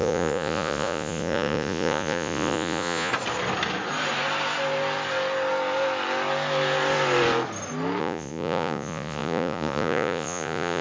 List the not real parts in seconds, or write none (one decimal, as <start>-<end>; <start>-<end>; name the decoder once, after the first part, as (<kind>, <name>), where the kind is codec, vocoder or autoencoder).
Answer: 0.0-3.1 (vocoder, Vocos); 8.0-10.8